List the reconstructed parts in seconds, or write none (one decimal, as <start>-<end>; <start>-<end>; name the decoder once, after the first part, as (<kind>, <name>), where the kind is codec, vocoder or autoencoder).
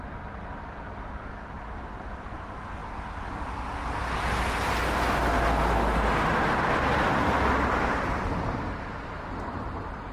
none